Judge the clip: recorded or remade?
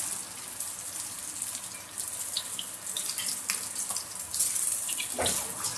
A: recorded